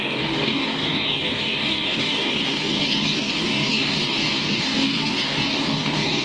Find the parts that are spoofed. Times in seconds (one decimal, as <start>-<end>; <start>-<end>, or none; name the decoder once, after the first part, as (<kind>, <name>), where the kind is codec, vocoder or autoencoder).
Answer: 0.0-6.2 (codec, DAC)